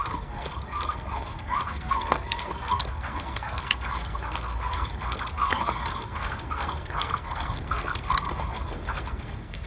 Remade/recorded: remade